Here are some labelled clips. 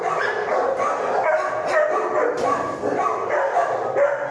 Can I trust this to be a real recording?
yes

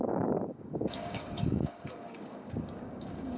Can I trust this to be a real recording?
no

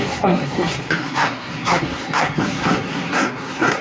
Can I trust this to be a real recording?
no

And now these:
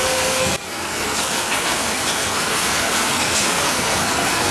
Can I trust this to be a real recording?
no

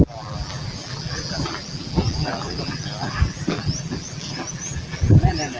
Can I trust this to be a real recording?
no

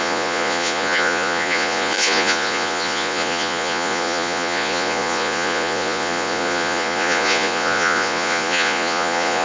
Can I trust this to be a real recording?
no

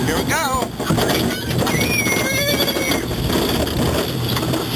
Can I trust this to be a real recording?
yes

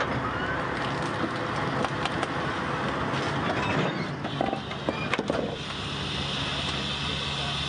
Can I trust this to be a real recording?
yes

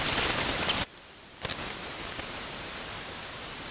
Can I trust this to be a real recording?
yes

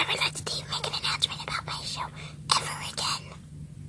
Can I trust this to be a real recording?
yes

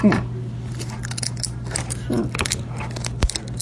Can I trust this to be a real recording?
yes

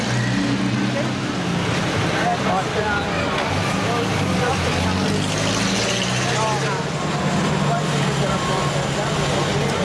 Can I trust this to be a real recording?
yes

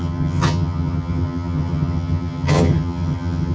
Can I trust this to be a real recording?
no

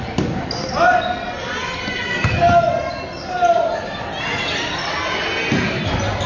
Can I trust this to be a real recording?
yes